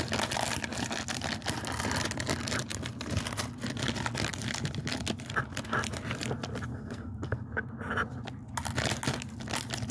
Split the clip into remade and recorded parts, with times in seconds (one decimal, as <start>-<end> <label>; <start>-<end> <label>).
0.0-6.7 recorded; 6.7-7.4 remade; 7.4-9.9 recorded